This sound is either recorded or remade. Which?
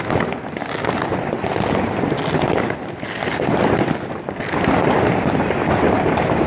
recorded